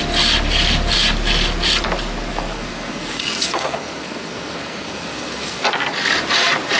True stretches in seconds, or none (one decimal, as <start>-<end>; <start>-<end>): 0.0-2.3; 5.6-6.8